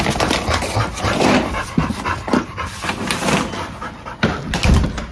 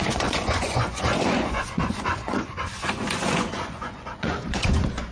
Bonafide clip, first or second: first